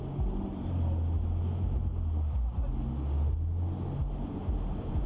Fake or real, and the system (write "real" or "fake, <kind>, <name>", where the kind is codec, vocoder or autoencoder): real